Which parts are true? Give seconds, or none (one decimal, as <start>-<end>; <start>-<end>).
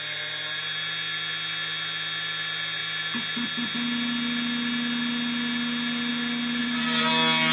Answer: 0.0-6.6; 7.1-7.5